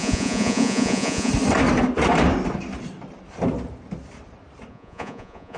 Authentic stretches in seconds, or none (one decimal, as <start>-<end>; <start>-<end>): 1.3-4.7